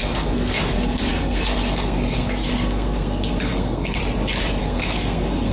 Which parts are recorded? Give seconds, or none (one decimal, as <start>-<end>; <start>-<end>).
4.0-4.6